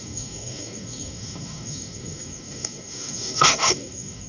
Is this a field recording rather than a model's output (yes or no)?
no